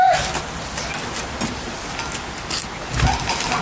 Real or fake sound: real